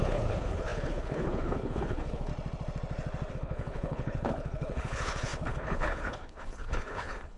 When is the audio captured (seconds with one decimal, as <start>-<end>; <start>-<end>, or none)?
2.3-3.3